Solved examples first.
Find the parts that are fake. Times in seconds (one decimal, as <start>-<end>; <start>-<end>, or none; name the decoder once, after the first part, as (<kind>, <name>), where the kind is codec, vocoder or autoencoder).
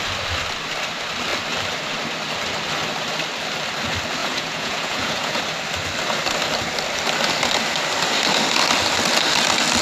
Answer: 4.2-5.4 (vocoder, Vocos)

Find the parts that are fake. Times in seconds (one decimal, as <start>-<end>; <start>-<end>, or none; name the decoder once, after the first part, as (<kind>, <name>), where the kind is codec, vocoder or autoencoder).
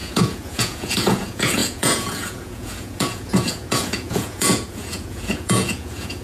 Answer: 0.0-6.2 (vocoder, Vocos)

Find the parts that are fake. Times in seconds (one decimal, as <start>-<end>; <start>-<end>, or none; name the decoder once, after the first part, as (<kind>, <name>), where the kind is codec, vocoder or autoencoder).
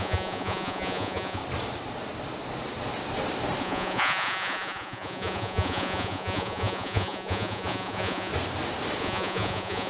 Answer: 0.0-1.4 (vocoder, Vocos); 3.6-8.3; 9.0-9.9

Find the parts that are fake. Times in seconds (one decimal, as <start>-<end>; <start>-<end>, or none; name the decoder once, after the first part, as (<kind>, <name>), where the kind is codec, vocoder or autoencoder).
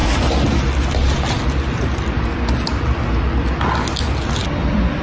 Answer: none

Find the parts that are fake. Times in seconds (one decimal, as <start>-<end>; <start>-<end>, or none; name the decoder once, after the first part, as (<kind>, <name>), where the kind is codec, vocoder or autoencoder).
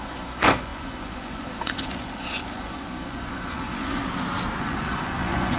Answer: 0.0-4.0 (vocoder, Vocos); 4.6-5.6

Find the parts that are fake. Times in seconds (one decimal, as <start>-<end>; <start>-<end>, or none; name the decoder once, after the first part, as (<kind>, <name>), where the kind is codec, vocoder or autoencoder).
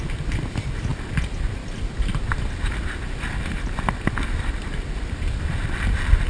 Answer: none